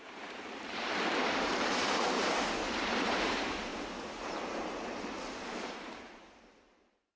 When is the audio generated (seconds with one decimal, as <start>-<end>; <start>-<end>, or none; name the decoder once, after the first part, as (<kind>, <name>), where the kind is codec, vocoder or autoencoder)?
0.0-3.7 (vocoder, BigVGAN v2); 4.2-7.2